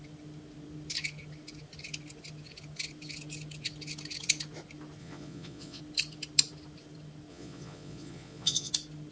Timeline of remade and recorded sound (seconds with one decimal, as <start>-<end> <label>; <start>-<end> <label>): 0.0-5.0 recorded; 5.0-5.8 remade; 5.8-7.3 recorded; 7.3-8.7 remade; 8.7-9.1 recorded